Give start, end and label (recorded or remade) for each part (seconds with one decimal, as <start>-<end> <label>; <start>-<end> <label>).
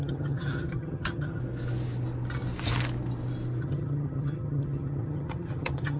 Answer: 0.0-1.4 remade; 1.4-3.6 recorded; 3.6-6.0 remade